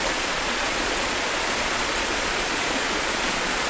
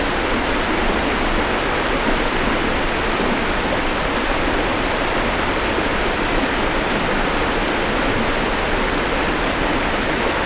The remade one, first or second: first